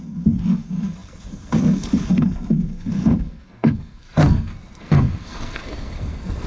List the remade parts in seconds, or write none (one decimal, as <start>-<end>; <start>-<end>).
0.0-6.5